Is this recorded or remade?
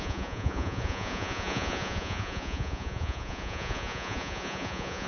remade